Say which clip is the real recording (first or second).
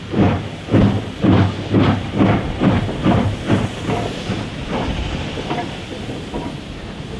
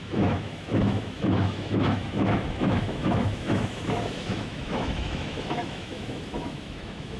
first